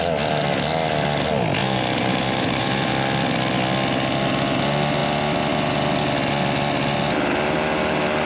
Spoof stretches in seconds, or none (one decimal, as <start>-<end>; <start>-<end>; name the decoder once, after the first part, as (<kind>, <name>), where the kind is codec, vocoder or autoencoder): 1.6-2.9 (vocoder, BigVGAN v2)